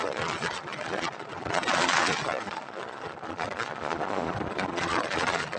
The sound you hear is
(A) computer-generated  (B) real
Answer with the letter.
A